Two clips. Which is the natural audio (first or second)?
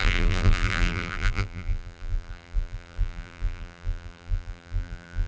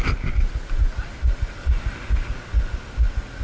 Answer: second